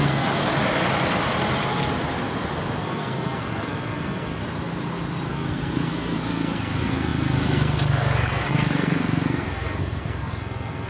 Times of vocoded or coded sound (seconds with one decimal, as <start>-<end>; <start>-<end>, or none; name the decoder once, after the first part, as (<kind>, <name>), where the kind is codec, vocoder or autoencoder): 0.0-0.4 (codec, SNAC); 2.8-4.4; 5.3-10.9